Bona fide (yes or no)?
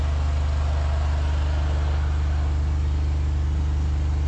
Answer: yes